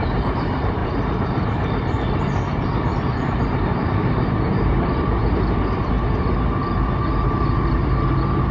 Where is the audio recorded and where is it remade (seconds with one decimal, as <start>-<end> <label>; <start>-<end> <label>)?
0.0-5.2 remade; 5.2-6.6 recorded; 6.6-8.5 remade